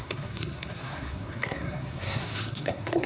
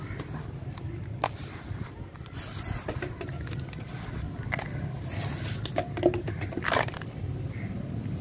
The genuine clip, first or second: second